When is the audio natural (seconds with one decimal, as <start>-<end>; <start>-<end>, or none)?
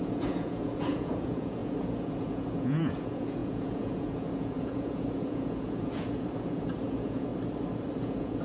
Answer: 7.3-8.0